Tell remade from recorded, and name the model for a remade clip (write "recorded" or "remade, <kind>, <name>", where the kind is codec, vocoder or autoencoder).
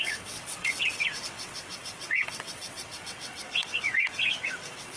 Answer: remade, vocoder, WaveNeXt